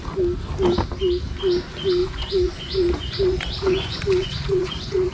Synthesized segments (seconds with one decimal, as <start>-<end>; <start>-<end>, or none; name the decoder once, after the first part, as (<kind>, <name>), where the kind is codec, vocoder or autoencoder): 2.0-5.1 (vocoder, Vocos)